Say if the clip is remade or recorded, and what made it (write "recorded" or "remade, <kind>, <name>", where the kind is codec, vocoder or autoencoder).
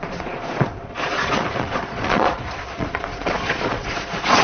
remade, vocoder, Vocos